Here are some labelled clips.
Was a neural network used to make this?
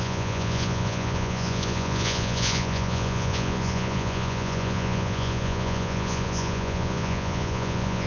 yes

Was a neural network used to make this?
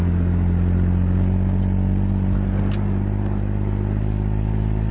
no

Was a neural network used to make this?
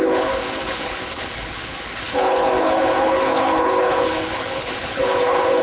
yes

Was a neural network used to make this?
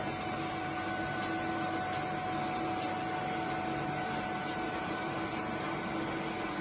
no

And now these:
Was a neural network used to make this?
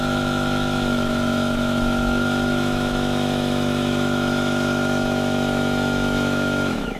yes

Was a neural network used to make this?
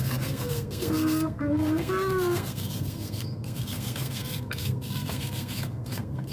yes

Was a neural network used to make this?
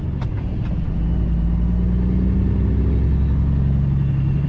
no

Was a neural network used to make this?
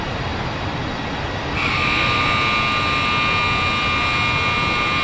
no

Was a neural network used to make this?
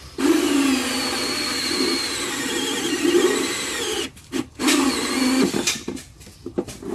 no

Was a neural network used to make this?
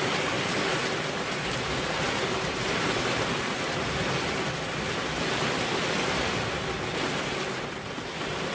no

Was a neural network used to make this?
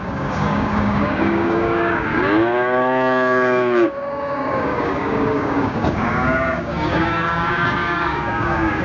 yes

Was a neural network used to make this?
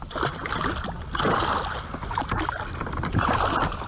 no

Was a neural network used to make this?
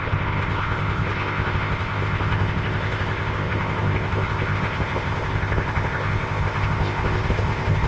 yes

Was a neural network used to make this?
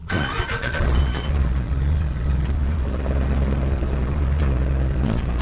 yes